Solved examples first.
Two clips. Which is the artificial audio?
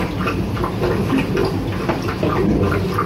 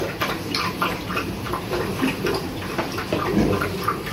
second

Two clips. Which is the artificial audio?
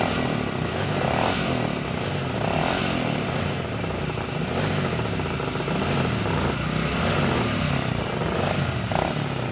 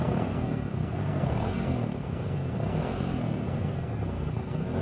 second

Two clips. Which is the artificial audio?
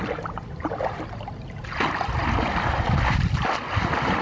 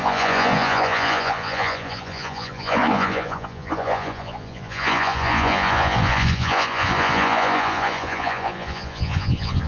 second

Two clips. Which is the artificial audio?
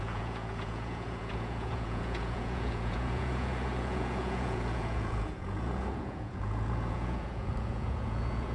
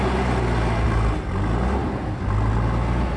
first